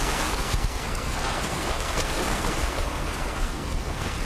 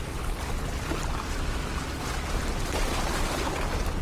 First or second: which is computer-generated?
first